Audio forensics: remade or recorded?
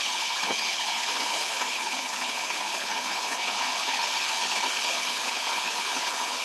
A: remade